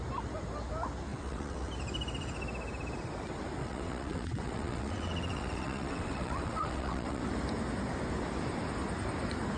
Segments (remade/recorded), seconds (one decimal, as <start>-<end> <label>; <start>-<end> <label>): 0.0-1.1 recorded; 1.1-1.7 remade; 1.7-3.6 recorded; 3.6-7.2 remade; 7.2-9.6 recorded

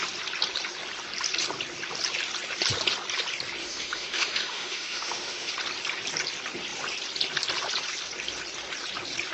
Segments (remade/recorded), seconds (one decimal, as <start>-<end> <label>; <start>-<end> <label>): 0.0-3.6 recorded; 3.6-5.5 remade; 5.5-9.3 recorded